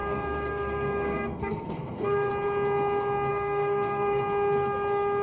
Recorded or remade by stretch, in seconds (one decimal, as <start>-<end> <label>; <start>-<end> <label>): 0.0-2.3 remade; 2.3-3.3 recorded; 3.3-4.2 remade; 4.2-5.2 recorded